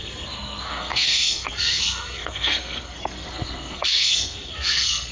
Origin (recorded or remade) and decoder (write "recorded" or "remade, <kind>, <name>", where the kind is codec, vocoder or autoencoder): remade, codec, SNAC